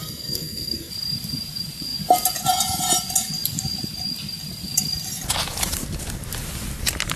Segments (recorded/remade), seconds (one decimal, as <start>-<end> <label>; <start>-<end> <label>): 0.0-0.9 remade; 0.9-7.2 recorded